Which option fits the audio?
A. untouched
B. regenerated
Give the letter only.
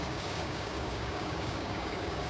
B